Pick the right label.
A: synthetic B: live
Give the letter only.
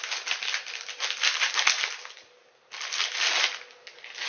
B